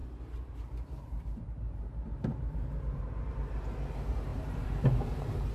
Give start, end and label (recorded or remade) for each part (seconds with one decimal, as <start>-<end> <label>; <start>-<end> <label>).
0.0-3.3 remade; 3.3-4.3 recorded; 4.3-5.5 remade